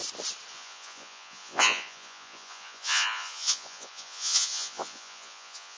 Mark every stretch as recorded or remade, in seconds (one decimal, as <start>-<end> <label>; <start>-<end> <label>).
0.0-0.5 recorded; 0.5-5.8 remade